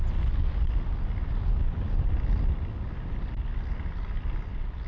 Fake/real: real